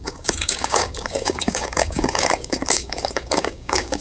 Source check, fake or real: fake